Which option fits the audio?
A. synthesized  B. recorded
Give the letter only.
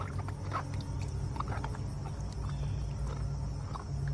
B